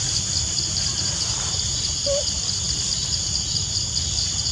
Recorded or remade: recorded